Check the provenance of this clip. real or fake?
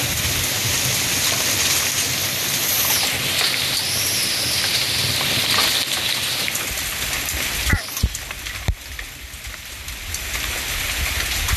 real